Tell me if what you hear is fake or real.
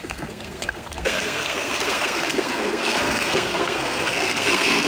fake